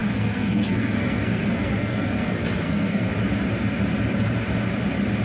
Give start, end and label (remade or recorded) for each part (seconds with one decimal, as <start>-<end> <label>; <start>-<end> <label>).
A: 0.0-3.1 remade; 3.1-5.2 recorded